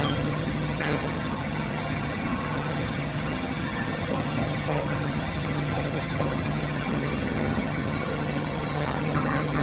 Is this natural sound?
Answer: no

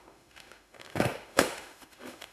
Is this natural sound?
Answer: no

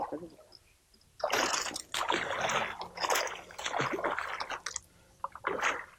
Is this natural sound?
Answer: yes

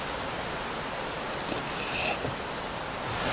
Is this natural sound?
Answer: yes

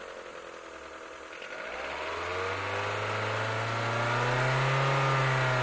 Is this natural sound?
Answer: yes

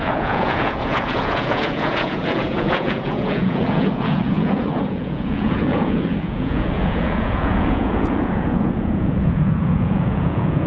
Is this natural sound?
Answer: no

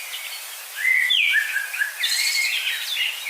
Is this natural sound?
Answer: yes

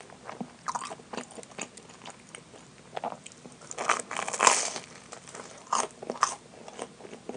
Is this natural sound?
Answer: yes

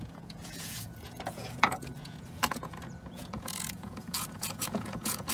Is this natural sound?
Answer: no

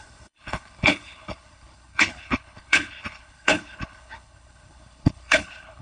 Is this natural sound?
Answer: no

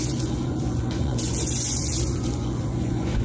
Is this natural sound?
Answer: no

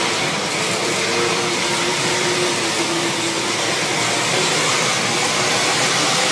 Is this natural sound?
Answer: yes